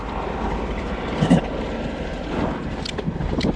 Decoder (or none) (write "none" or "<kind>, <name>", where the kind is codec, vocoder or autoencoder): none